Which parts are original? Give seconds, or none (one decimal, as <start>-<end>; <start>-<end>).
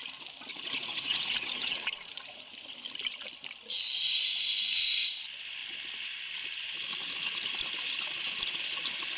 0.0-0.5; 2.4-9.2